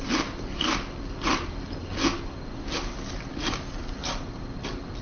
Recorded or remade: recorded